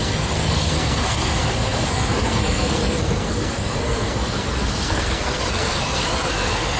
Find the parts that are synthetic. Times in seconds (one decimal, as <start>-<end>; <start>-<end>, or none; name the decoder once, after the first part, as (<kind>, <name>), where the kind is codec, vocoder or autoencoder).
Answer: 0.0-6.8 (codec, SNAC)